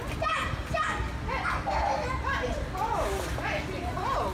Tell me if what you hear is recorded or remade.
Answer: recorded